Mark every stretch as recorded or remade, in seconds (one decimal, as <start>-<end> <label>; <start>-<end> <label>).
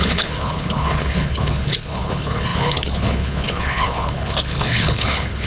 0.0-5.5 remade